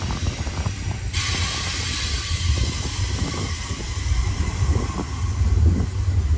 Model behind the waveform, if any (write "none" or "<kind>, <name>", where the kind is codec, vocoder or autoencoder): none